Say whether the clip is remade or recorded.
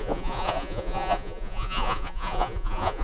remade